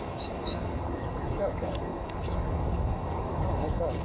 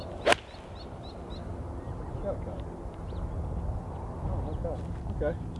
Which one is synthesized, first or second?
first